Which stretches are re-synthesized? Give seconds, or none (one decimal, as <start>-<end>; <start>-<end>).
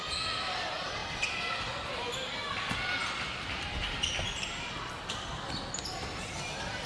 none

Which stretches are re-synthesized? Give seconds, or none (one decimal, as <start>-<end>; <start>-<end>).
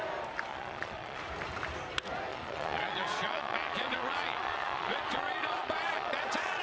0.5-1.2; 2.3-6.6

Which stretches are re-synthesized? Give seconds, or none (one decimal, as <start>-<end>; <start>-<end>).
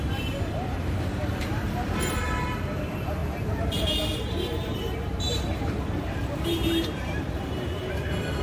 0.0-8.4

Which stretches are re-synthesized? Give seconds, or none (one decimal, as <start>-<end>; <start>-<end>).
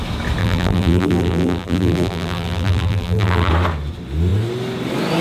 0.4-3.5